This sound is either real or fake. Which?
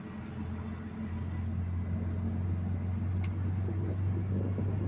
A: real